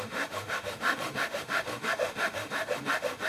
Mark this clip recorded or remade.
remade